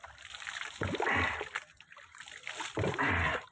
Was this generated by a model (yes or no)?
no